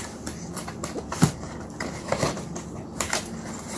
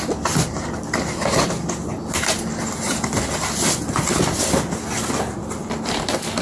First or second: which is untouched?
second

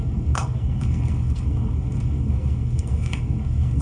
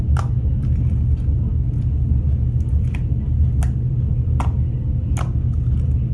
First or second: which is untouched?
second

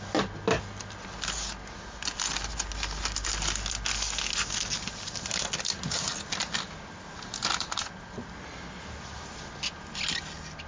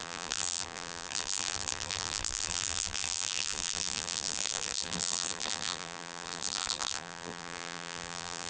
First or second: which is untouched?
first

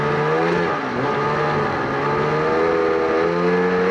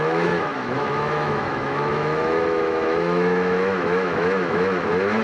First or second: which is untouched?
first